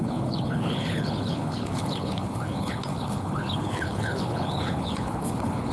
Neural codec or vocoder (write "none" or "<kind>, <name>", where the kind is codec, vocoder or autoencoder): codec, HILCodec